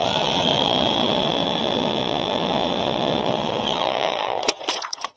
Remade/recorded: remade